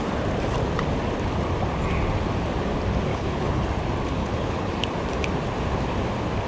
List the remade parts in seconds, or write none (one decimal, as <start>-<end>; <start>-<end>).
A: 3.1-3.7; 4.2-4.7